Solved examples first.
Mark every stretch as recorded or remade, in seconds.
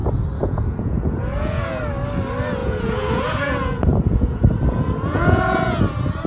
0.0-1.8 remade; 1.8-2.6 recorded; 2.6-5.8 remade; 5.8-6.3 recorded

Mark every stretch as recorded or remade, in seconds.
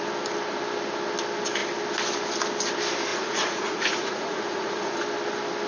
0.0-3.1 recorded; 3.1-4.9 remade; 4.9-5.7 recorded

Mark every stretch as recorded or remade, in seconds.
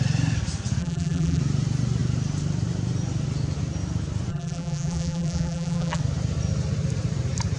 0.0-0.8 recorded; 0.8-1.4 remade; 1.4-4.3 recorded; 4.3-6.0 remade; 6.0-7.6 recorded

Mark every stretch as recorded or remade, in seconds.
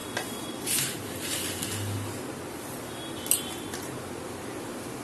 0.0-5.0 recorded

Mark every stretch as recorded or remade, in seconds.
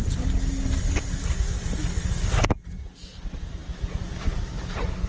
0.0-5.1 recorded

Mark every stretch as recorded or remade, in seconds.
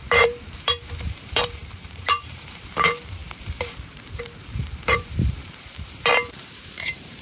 0.0-7.2 remade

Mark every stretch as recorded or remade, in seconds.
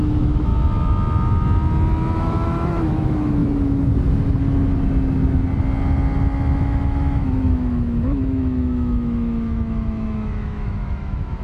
0.0-0.5 remade; 0.5-2.2 recorded; 2.2-3.4 remade; 3.4-6.6 recorded; 6.6-11.4 remade